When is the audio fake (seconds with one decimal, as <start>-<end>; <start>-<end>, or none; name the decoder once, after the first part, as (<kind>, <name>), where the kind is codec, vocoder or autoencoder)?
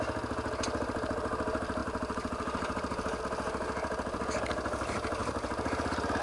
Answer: 1.8-3.2 (vocoder, BigVGAN v2); 5.2-6.2